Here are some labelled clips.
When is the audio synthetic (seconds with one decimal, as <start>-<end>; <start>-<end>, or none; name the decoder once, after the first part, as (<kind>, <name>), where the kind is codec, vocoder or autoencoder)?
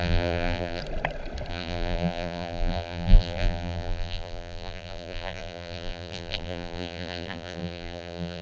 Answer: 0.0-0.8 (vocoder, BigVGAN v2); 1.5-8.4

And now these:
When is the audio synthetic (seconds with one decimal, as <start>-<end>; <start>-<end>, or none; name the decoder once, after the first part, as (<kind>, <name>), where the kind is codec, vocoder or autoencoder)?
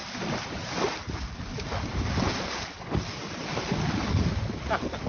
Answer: 1.5-4.6 (vocoder, BigVGAN v2)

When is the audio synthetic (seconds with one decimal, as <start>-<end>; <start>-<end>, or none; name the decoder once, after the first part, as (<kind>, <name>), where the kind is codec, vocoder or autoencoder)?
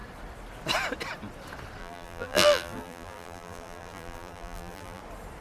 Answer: 1.8-5.0 (vocoder, BigVGAN v2)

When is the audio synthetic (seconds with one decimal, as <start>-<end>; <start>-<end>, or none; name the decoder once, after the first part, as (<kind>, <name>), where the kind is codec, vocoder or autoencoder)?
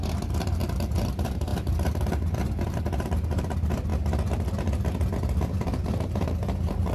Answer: 0.0-0.6 (vocoder, BigVGAN v2); 1.1-3.9; 5.5-6.9